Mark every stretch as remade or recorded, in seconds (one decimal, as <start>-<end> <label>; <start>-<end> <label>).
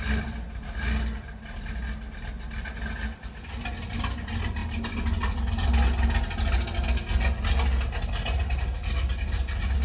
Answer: 0.0-9.8 recorded